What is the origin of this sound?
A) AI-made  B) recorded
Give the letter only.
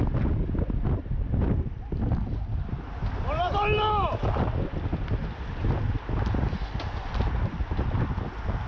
B